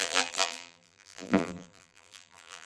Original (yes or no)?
no